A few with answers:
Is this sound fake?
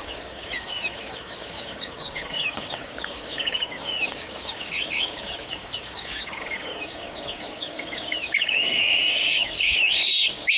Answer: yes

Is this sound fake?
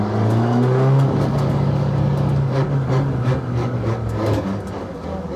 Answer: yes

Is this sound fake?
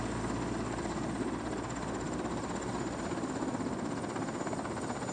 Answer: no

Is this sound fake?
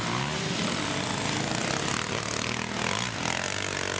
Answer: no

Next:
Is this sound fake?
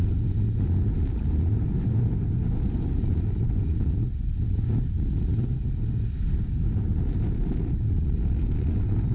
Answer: no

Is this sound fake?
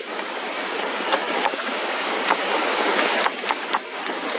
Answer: yes